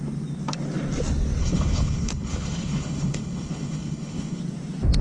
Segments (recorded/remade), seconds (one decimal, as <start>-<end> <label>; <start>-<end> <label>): 0.0-1.4 recorded; 1.4-4.4 remade; 4.4-5.0 recorded